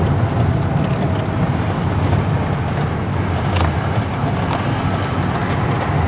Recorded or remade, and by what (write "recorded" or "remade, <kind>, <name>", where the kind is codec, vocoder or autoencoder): recorded